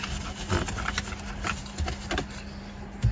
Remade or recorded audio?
recorded